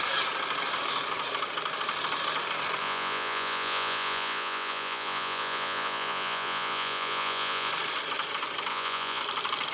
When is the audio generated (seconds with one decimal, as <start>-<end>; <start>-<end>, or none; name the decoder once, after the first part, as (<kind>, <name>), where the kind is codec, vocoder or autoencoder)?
2.8-7.7 (vocoder, Vocos); 8.7-9.2